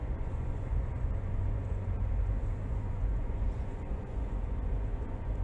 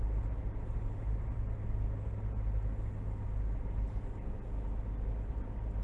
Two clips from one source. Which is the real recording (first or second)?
second